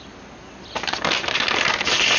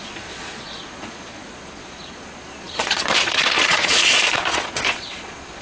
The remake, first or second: second